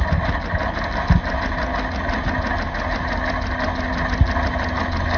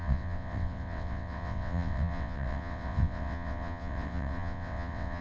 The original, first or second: first